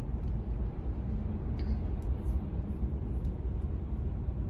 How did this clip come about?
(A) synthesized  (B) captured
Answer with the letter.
B